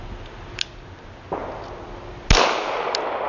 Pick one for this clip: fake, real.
real